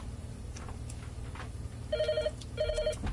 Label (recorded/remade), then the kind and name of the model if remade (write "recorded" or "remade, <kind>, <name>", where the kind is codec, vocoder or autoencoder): recorded